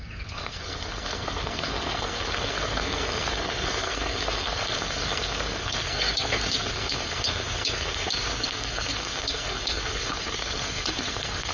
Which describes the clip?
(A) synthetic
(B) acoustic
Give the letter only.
A